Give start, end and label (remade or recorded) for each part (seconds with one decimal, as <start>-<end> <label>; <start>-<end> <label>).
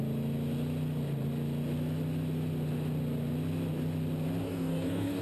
0.0-4.4 recorded; 4.4-5.2 remade